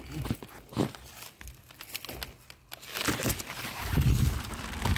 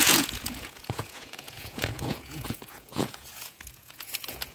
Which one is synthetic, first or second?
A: second